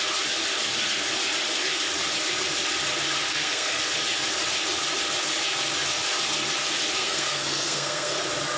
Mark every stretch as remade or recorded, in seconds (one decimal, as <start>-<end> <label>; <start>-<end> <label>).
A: 0.0-3.3 recorded; 3.3-3.8 remade; 3.8-7.0 recorded; 7.0-8.2 remade; 8.2-8.6 recorded